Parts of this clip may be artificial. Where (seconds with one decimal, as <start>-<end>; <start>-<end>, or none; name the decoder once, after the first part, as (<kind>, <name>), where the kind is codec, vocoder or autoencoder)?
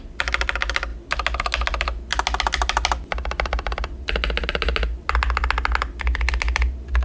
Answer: none